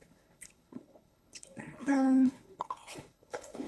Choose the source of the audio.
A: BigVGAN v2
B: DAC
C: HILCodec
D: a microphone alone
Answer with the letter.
C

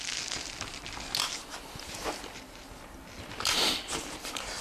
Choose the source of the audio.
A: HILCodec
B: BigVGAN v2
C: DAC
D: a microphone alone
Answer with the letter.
D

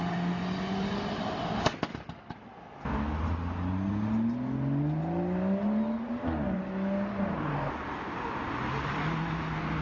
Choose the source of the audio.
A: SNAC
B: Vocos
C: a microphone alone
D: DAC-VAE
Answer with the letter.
C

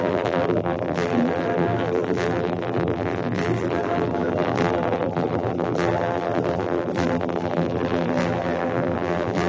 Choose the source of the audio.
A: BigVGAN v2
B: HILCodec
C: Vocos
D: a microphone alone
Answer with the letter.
A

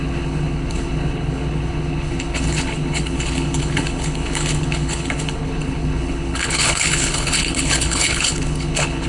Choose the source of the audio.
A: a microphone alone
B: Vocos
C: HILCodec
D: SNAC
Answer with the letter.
C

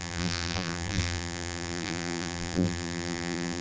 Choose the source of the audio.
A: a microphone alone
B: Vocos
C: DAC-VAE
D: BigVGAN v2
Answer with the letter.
D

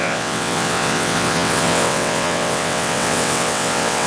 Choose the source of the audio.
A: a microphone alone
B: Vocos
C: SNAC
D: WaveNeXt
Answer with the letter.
D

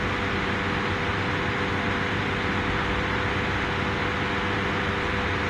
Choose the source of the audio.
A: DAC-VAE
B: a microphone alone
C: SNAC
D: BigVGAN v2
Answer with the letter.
B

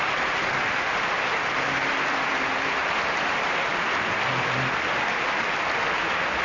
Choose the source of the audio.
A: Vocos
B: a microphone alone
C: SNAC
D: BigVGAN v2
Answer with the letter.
B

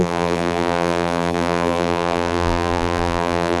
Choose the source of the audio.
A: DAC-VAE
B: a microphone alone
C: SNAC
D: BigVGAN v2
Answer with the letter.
D